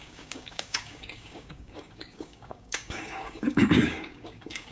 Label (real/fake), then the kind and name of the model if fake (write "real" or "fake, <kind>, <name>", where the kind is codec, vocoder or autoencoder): fake, codec, DAC